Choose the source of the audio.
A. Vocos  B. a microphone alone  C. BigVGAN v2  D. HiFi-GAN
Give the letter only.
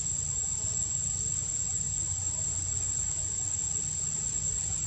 B